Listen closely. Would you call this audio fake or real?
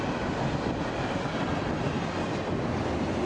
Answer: real